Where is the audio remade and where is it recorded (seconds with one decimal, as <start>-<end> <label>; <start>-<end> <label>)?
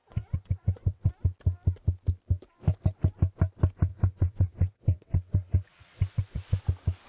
0.0-1.1 remade; 1.1-3.9 recorded; 3.9-6.6 remade; 6.6-7.1 recorded